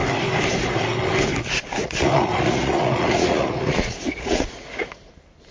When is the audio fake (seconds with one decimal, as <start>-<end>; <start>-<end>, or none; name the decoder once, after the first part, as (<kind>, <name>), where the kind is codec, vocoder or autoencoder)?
1.8-5.1 (vocoder, Vocos)